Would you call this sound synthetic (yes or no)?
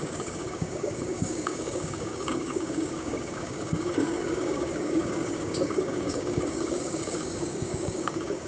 yes